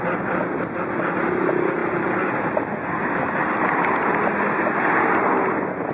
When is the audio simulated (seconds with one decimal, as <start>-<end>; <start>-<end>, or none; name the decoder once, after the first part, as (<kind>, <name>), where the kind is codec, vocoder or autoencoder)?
none